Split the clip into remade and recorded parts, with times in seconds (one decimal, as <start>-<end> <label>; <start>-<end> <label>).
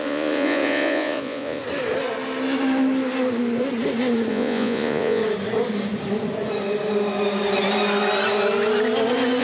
0.0-1.6 remade; 1.6-4.3 recorded; 4.3-5.2 remade; 5.2-9.4 recorded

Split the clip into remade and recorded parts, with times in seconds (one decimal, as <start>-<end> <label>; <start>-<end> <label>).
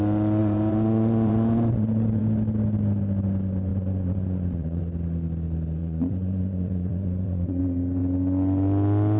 0.0-0.4 recorded; 0.4-2.2 remade; 2.2-3.7 recorded; 3.7-4.8 remade; 4.8-5.8 recorded; 5.8-7.6 remade; 7.6-9.2 recorded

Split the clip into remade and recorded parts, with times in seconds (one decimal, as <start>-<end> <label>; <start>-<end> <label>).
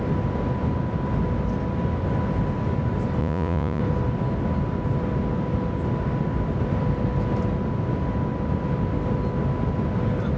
0.0-3.2 recorded; 3.2-3.8 remade; 3.8-10.4 recorded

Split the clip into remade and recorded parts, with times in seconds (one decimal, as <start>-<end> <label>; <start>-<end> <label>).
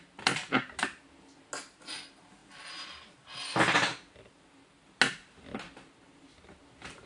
0.0-7.1 recorded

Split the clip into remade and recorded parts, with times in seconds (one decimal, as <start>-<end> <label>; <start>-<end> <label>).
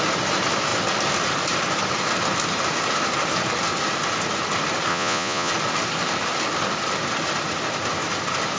0.0-4.9 recorded; 4.9-5.5 remade; 5.5-8.6 recorded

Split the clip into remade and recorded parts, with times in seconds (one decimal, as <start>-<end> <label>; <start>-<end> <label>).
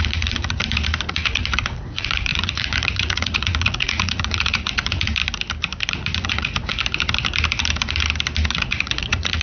0.0-0.6 remade; 0.6-1.1 recorded; 1.1-5.2 remade; 5.2-5.9 recorded; 5.9-6.7 remade; 6.7-8.5 recorded; 8.5-9.4 remade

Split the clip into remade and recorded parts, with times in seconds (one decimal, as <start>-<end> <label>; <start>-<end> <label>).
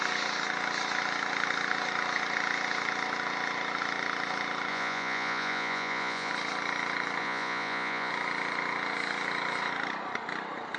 0.0-4.7 recorded; 4.7-6.3 remade; 6.3-7.2 recorded; 7.2-8.1 remade; 8.1-10.8 recorded